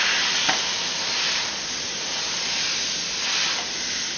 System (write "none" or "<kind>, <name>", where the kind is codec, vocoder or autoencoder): vocoder, BigVGAN v2